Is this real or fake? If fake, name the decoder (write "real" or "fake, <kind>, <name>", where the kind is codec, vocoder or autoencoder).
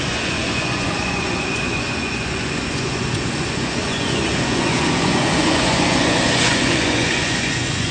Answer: fake, vocoder, Vocos